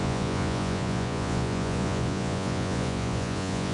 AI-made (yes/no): yes